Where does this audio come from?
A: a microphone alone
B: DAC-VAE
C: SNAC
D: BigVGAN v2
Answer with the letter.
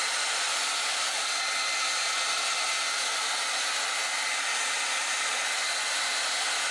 A